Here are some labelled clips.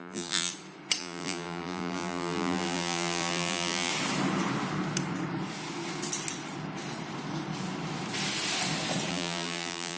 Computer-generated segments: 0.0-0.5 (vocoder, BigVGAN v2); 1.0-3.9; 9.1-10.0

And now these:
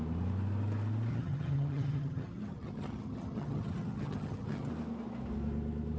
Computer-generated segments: 1.1-4.7 (vocoder, HiFi-GAN)

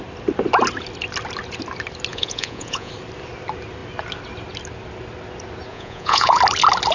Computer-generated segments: 2.1-2.9 (vocoder, Vocos); 5.7-6.4

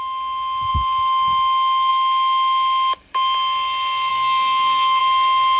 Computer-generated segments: 4.1-5.0 (codec, SNAC)

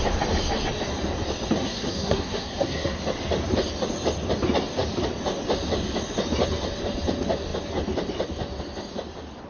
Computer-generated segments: 1.6-3.0 (codec, SNAC)